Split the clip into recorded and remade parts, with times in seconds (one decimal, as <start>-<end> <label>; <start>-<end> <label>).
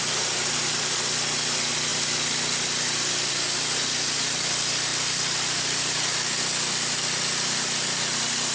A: 0.0-8.5 recorded